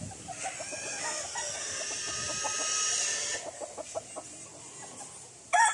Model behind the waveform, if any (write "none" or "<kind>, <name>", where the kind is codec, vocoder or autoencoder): none